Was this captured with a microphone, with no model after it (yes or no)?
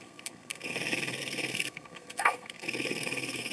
no